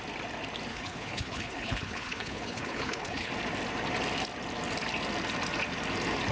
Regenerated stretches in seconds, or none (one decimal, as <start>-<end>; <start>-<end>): 0.7-3.3